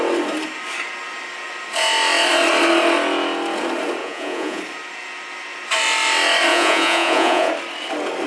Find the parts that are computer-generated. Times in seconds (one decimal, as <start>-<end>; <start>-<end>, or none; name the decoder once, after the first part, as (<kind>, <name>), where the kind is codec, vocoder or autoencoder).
4.0-4.6 (vocoder, Vocos); 6.5-7.5